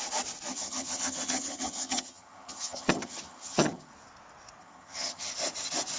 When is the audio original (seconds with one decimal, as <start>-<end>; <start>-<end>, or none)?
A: 0.0-0.5; 3.9-4.6; 5.3-6.0